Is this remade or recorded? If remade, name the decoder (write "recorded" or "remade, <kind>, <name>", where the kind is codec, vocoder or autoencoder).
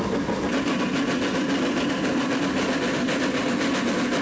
recorded